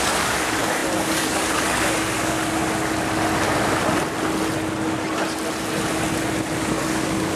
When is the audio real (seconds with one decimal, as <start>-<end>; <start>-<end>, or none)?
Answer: 2.6-6.7